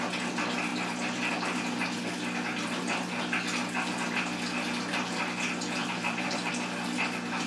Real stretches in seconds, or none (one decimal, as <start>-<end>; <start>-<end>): 0.0-5.8; 6.5-7.5